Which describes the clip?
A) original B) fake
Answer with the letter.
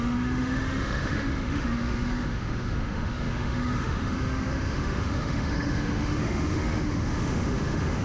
B